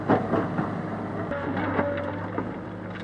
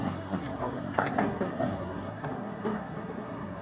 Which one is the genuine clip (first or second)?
first